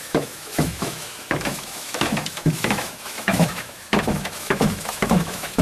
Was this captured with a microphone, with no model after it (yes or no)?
no